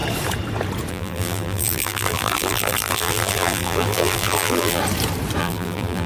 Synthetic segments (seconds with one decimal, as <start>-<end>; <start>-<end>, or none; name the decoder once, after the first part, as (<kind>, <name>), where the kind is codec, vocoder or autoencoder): 0.9-4.8 (vocoder, BigVGAN v2); 5.4-6.1